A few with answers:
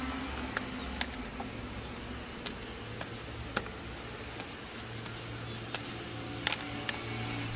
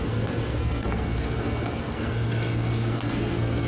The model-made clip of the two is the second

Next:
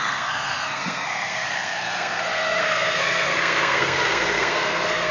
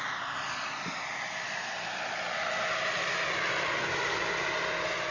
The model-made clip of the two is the first